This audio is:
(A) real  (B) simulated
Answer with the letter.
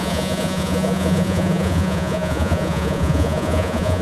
B